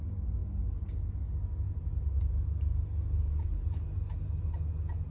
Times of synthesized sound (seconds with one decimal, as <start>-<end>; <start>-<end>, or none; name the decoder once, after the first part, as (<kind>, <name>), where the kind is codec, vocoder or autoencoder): none